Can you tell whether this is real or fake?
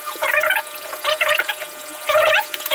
fake